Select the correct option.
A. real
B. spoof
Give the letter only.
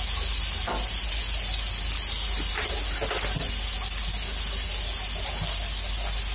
A